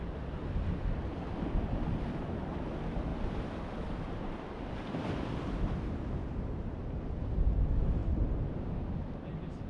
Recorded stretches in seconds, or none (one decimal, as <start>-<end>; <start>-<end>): 0.0-3.1; 5.4-9.7